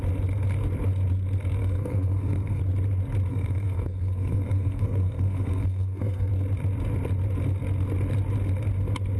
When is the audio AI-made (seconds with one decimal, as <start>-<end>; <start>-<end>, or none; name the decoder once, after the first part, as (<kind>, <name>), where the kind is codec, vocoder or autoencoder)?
1.6-2.6 (codec, SNAC); 3.3-6.3